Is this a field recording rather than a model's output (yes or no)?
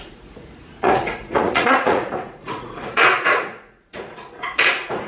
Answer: no